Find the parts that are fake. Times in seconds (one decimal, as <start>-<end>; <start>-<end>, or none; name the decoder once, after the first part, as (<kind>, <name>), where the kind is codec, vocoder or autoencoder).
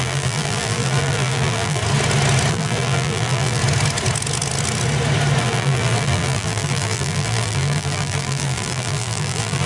0.0-1.8 (vocoder, BigVGAN v2); 2.5-3.6; 5.4-9.7